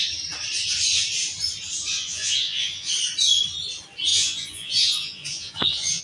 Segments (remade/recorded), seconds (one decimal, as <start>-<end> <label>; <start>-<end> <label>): 0.0-1.9 recorded; 1.9-2.9 remade; 2.9-4.1 recorded; 4.1-6.0 remade